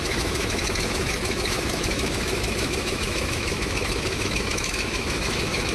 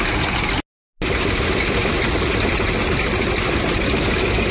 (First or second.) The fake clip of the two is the first